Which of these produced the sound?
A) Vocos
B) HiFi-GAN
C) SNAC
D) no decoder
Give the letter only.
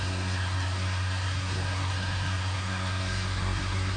C